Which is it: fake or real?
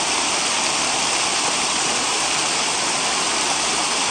real